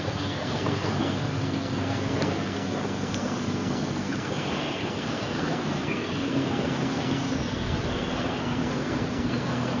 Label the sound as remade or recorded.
remade